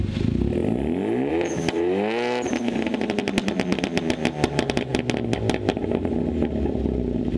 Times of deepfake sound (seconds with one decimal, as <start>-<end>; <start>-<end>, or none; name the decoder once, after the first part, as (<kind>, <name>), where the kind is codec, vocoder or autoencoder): none

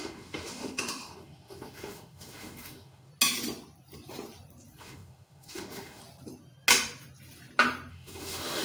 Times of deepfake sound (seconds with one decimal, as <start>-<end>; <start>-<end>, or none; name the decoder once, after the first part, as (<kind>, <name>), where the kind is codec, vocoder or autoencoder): 0.0-3.1 (autoencoder, DAC-VAE); 4.8-6.0; 7.9-8.6